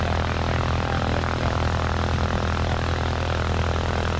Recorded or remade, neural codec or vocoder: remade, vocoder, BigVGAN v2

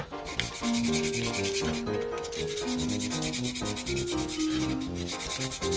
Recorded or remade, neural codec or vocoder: recorded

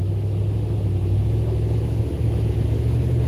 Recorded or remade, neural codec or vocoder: remade, autoencoder, DAC-VAE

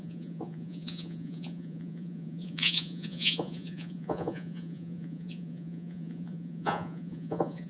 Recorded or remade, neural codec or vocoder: remade, vocoder, Vocos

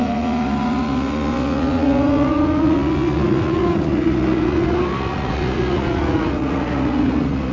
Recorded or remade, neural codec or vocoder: remade, vocoder, Vocos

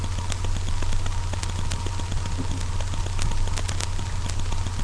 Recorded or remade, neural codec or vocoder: recorded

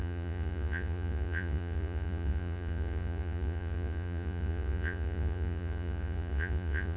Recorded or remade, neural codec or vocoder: remade, vocoder, Vocos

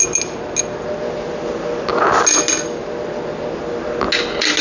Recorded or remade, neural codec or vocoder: recorded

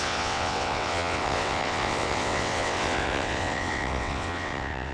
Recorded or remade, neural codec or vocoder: remade, vocoder, WaveNeXt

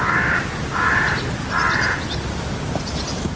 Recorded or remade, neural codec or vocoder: recorded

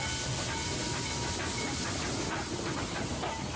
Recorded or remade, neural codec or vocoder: recorded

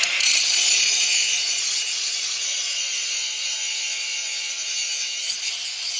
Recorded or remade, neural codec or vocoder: remade, vocoder, Vocos